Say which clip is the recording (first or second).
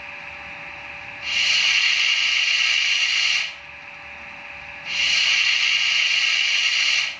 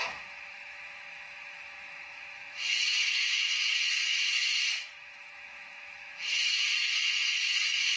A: first